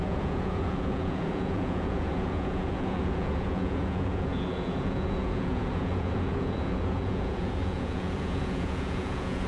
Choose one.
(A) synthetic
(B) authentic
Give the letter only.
A